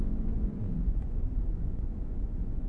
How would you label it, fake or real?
fake